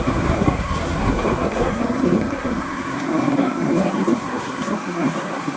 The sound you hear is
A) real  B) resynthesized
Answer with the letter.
B